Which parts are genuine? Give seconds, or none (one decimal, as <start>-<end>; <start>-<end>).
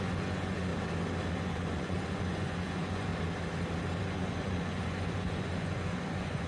0.7-1.3; 3.1-4.0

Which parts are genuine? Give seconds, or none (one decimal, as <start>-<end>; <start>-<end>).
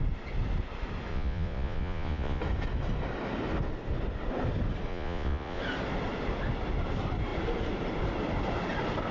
0.0-1.1; 2.4-4.9; 5.6-9.1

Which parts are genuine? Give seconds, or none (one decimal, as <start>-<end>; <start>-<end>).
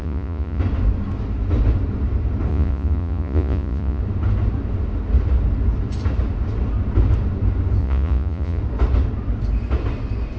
0.6-2.5; 4.0-7.8; 8.6-10.4